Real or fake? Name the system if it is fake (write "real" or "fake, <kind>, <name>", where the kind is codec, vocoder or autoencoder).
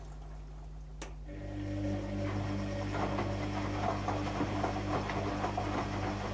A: real